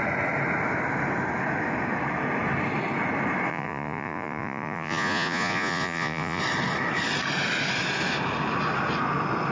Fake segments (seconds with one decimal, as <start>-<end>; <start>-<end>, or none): 3.5-6.4